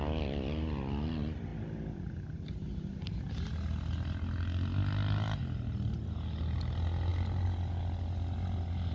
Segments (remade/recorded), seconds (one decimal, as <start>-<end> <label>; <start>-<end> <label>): 0.0-8.9 recorded